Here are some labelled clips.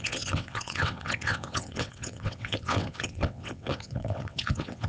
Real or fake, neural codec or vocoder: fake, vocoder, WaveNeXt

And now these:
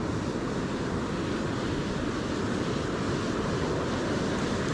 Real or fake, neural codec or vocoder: real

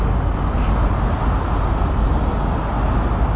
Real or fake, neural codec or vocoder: real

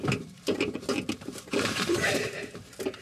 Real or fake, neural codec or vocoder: fake, vocoder, BigVGAN v2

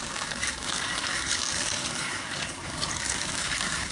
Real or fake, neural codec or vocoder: fake, codec, DAC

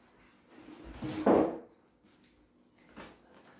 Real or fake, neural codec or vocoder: real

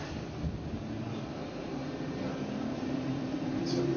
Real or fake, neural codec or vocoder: fake, vocoder, BigVGAN v2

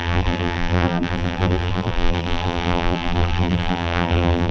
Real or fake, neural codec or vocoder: fake, vocoder, BigVGAN v2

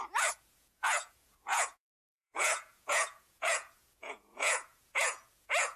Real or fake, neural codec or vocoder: fake, vocoder, Vocos